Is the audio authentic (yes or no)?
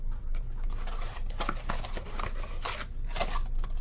yes